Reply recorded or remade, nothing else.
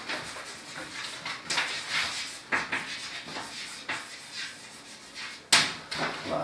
recorded